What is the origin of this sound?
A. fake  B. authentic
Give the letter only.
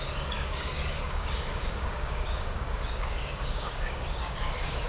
A